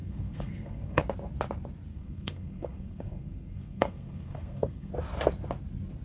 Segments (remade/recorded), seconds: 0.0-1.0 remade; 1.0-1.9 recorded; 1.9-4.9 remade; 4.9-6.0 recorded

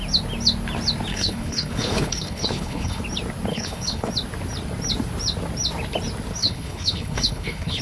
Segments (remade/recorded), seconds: 0.0-1.1 recorded; 1.1-3.0 remade; 3.0-3.5 recorded; 3.5-4.1 remade; 4.1-6.4 recorded; 6.4-7.8 remade

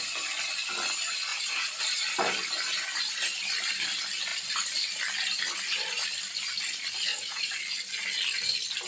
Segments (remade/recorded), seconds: 0.0-1.3 recorded; 1.3-1.8 remade; 1.8-7.1 recorded; 7.1-7.6 remade; 7.6-8.9 recorded

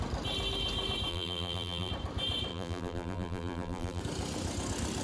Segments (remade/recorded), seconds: 0.0-1.1 recorded; 1.1-1.9 remade; 1.9-2.5 recorded; 2.5-4.0 remade; 4.0-5.0 recorded

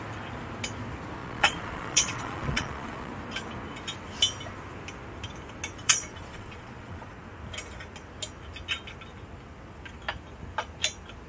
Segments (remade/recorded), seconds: 0.0-1.2 recorded; 1.2-3.1 remade; 3.1-5.8 recorded; 5.8-7.1 remade; 7.1-11.3 recorded

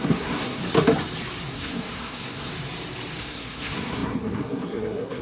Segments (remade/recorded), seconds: 0.0-0.6 remade; 0.6-1.5 recorded; 1.5-2.5 remade; 2.5-3.2 recorded; 3.2-5.2 remade

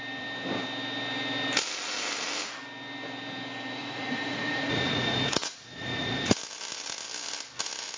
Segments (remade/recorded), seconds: 0.0-3.8 recorded; 3.8-6.4 remade; 6.4-8.0 recorded